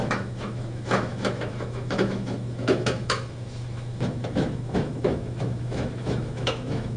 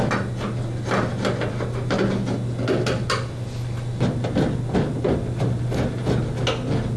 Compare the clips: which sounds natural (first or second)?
second